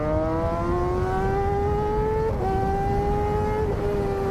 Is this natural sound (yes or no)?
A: yes